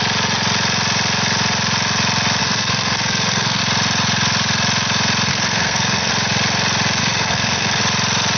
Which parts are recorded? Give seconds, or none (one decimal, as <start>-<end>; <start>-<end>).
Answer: 0.0-2.4; 3.6-5.3; 6.1-7.0; 7.8-8.4